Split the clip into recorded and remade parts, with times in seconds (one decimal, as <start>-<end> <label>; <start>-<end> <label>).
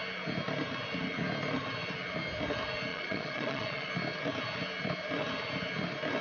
0.0-2.9 recorded; 2.9-3.9 remade; 3.9-6.2 recorded